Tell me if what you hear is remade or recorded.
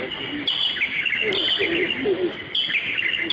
recorded